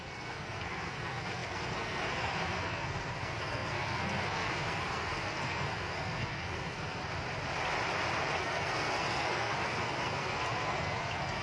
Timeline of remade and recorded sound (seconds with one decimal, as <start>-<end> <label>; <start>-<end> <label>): 0.0-7.0 remade; 7.0-8.4 recorded; 8.4-11.4 remade